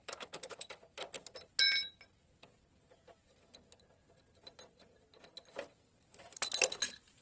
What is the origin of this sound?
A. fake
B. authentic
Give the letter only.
B